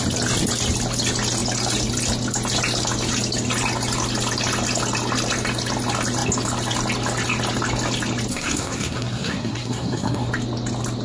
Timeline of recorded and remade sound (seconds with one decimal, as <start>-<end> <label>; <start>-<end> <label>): 0.0-8.3 recorded; 8.3-10.3 remade; 10.3-11.0 recorded